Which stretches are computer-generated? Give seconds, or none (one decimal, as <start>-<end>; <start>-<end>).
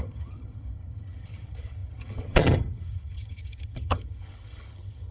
0.0-5.1